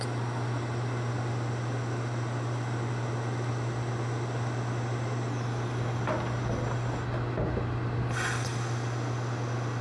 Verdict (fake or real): real